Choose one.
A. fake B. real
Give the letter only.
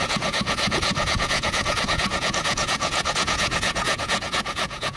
A